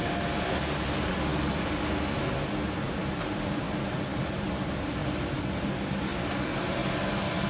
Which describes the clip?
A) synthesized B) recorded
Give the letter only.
B